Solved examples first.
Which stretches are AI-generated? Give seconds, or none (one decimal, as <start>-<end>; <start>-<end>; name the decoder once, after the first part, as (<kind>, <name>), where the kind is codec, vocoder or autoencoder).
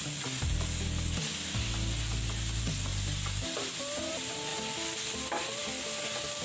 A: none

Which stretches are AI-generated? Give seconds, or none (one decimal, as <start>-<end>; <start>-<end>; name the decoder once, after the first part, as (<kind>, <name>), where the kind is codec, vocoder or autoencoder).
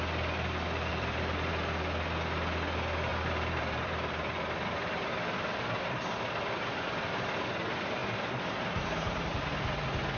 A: 0.9-1.5 (vocoder, BigVGAN v2); 3.1-6.2; 8.0-9.1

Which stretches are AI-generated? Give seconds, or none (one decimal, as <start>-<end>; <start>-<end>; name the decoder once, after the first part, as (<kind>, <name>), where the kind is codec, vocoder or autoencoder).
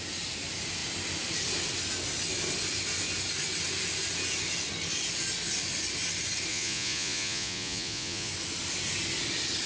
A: 6.5-8.3 (vocoder, Vocos)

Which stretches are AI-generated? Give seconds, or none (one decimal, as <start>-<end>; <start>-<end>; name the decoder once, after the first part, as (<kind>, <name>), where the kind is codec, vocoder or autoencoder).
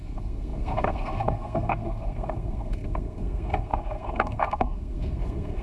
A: 0.0-5.6 (codec, SNAC)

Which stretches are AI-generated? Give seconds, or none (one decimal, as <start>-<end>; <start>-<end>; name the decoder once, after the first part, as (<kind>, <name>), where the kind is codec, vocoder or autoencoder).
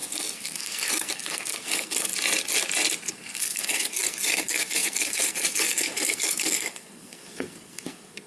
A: 0.0-2.1 (codec, SNAC); 3.1-8.3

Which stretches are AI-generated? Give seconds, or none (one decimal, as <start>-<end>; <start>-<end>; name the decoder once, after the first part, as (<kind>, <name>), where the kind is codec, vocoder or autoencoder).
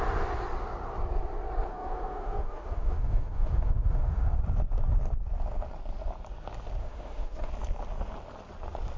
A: 1.7-4.4 (autoencoder, DAC-VAE); 6.8-7.5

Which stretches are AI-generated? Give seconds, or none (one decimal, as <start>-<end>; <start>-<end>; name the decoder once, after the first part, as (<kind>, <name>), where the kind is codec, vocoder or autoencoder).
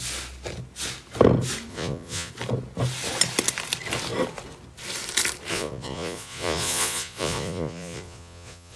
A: 1.7-2.3 (vocoder, Vocos); 5.5-8.8